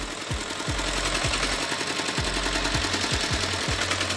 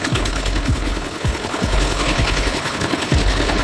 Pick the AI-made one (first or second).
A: second